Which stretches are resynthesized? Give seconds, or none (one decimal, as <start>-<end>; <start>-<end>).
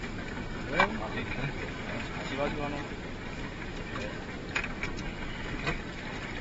none